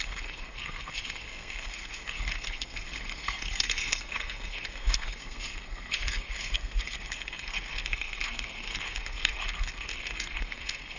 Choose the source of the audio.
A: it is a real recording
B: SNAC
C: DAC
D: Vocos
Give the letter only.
B